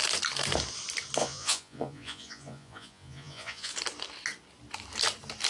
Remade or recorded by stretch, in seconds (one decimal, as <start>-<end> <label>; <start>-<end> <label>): 0.0-1.2 recorded; 1.2-3.7 remade; 3.7-5.5 recorded